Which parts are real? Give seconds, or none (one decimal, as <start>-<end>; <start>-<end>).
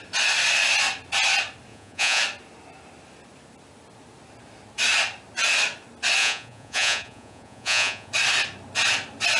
0.0-1.7; 2.2-6.2; 8.1-9.4